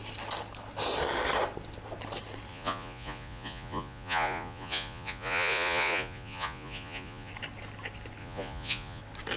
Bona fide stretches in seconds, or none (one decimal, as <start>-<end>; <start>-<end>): 0.0-2.5; 7.3-8.2; 9.0-9.4